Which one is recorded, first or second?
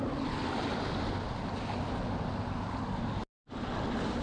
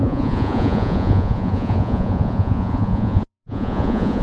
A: first